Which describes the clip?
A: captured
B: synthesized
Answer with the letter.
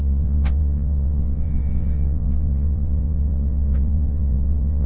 B